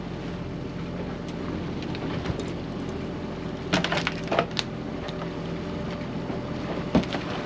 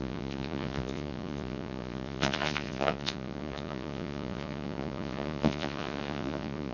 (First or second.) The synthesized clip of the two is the second